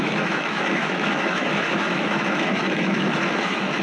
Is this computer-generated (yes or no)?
yes